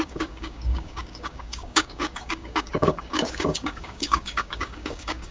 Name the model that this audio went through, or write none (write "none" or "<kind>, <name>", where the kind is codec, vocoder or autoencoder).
codec, DAC